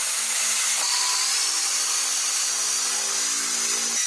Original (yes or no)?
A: yes